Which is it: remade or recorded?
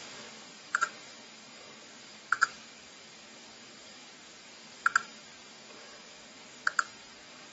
remade